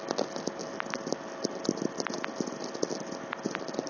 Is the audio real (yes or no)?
yes